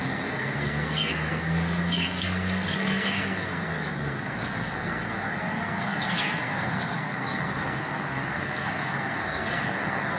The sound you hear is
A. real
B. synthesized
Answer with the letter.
B